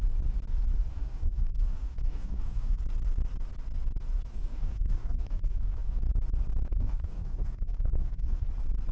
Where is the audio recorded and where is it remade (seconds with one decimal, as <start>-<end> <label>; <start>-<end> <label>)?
0.0-0.9 recorded; 0.9-2.8 remade; 2.8-4.3 recorded; 4.3-6.0 remade; 6.0-6.7 recorded; 6.7-8.5 remade; 8.5-8.9 recorded